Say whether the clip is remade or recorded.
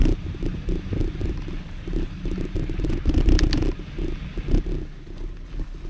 recorded